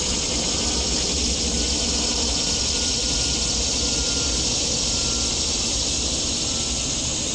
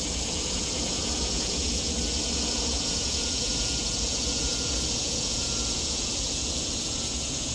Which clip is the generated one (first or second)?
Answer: second